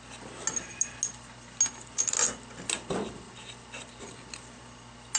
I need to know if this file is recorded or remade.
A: recorded